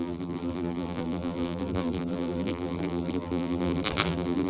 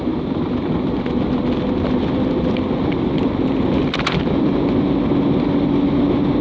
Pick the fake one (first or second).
first